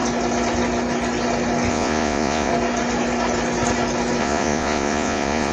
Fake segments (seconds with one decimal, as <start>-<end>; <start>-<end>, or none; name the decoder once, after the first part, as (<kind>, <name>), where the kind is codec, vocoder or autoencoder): 1.7-2.5 (vocoder, Vocos); 4.2-5.5